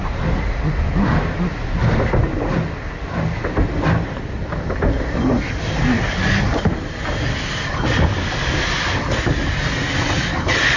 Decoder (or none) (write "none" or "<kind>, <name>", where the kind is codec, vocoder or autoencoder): none